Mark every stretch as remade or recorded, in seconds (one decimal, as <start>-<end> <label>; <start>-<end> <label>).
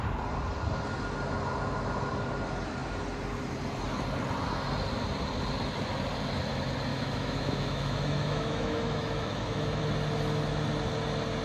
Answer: 0.0-6.9 recorded; 6.9-9.8 remade; 9.8-11.4 recorded